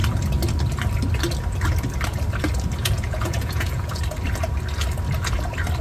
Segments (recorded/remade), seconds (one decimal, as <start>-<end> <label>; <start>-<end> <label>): 0.0-2.8 recorded; 2.8-4.0 remade; 4.0-5.8 recorded